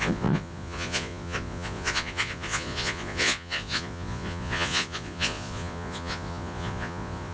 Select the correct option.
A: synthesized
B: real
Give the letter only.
A